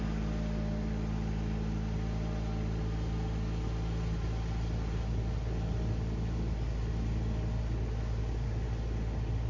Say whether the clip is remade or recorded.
recorded